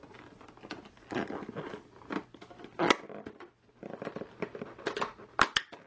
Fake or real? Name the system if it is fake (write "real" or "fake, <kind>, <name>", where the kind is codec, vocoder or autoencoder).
real